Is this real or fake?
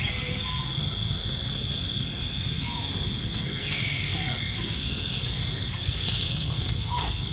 fake